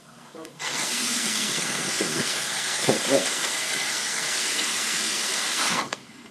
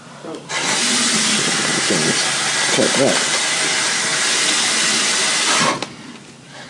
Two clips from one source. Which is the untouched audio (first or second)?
second